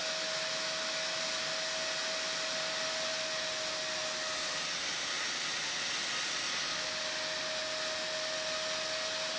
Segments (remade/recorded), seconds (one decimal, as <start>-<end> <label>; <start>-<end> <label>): 0.0-1.2 remade; 1.2-9.4 recorded